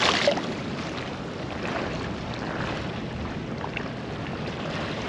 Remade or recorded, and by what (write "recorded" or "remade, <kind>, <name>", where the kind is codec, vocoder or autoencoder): recorded